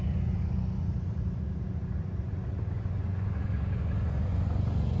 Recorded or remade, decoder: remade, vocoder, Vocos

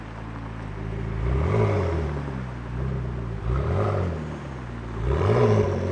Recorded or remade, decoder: recorded